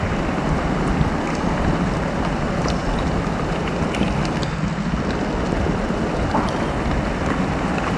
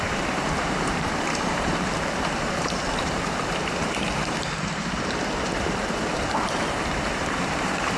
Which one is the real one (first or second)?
first